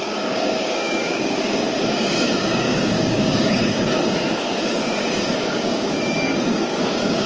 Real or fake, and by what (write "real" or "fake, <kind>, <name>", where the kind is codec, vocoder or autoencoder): fake, codec, DAC